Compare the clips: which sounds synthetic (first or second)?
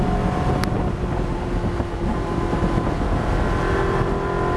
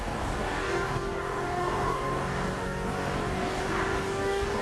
second